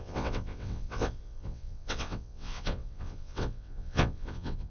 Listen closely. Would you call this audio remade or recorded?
remade